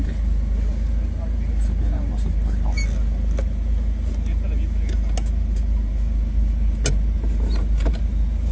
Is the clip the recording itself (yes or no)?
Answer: yes